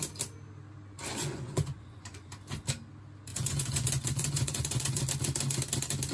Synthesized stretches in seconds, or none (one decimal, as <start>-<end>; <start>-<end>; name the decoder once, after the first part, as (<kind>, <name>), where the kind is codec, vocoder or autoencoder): 1.1-2.3 (vocoder, Vocos); 3.3-5.0